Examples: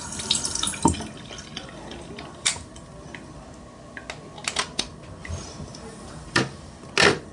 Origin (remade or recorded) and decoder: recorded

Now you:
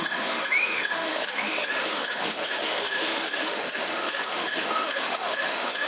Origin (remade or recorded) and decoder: remade, autoencoder, DAC-VAE